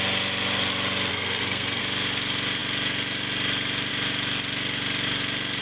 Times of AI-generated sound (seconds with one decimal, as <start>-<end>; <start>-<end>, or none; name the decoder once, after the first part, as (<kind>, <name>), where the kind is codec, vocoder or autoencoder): 1.1-1.8 (codec, SNAC)